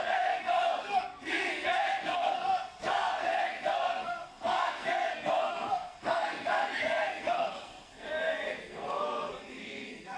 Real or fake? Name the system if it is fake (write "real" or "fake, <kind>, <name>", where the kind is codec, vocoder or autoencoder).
fake, codec, SNAC